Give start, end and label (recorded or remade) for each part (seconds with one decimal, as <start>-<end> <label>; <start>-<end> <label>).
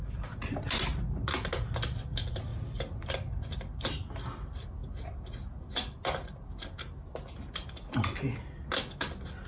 0.0-9.5 recorded